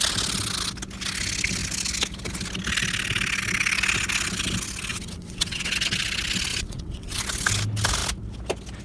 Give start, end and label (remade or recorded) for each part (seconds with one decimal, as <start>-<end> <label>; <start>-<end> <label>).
0.0-4.9 recorded; 4.9-5.7 remade; 5.7-6.5 recorded; 6.5-7.2 remade; 7.2-8.8 recorded